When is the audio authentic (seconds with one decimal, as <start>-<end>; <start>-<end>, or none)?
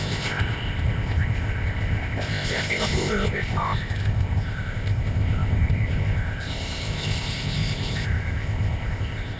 none